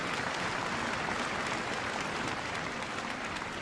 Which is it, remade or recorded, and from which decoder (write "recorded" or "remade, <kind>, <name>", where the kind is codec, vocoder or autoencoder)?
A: recorded